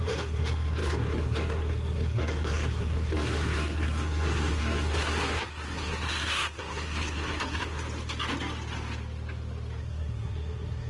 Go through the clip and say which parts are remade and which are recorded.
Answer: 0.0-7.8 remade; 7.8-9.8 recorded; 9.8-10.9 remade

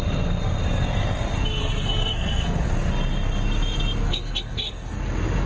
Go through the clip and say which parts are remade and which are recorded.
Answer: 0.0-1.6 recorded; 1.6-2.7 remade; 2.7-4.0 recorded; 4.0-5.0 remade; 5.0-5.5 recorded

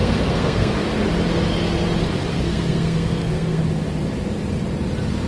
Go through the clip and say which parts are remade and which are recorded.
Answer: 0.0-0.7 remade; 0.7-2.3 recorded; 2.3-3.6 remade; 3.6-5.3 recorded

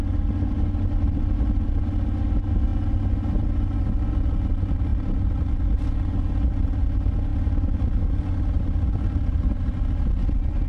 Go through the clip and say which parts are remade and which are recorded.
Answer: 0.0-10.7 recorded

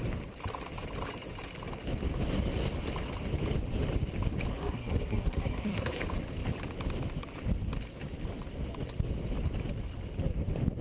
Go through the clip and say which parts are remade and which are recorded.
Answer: 0.0-4.5 recorded; 4.5-6.0 remade; 6.0-10.8 recorded

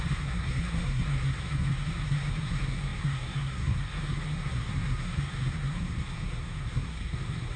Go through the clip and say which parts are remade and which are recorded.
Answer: 0.0-7.6 remade